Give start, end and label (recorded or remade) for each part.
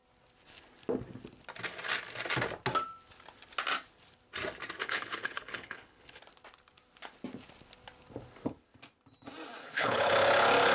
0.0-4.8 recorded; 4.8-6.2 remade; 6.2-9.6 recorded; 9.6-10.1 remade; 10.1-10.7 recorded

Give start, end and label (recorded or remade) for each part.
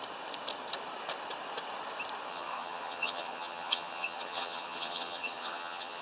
0.0-2.3 recorded; 2.3-6.0 remade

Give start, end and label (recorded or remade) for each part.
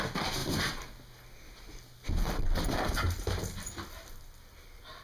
0.0-5.0 recorded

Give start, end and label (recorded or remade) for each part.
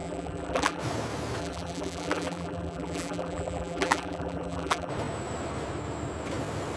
0.0-0.8 remade; 0.8-1.4 recorded; 1.4-4.9 remade; 4.9-6.8 recorded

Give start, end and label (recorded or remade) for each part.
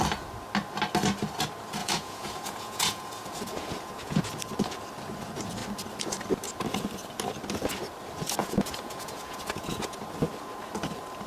0.0-1.8 recorded; 1.8-4.3 remade; 4.3-8.4 recorded; 8.4-10.0 remade; 10.0-11.3 recorded